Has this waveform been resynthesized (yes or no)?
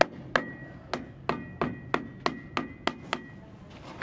no